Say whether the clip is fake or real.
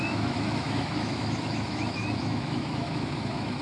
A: fake